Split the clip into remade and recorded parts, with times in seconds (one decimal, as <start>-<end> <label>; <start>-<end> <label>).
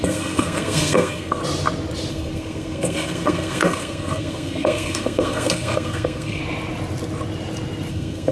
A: 0.0-1.4 remade; 1.4-2.1 recorded; 2.1-6.4 remade; 6.4-7.9 recorded; 7.9-8.3 remade